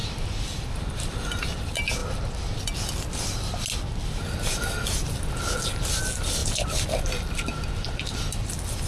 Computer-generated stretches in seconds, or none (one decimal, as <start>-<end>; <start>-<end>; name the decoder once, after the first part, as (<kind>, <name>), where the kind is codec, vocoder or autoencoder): none